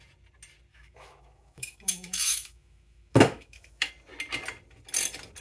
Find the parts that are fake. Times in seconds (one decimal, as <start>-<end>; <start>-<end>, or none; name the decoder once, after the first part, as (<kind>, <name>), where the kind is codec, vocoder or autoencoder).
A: 0.7-3.9 (autoencoder, DAC-VAE)